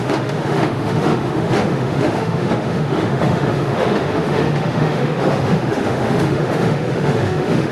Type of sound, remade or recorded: remade